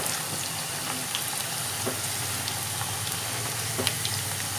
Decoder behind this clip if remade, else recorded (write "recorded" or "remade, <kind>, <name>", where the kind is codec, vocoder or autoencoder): remade, vocoder, BigVGAN v2